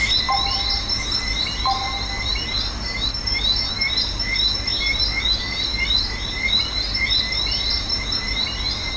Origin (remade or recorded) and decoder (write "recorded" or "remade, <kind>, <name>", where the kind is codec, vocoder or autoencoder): remade, vocoder, BigVGAN v2